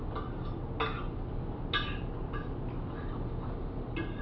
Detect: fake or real real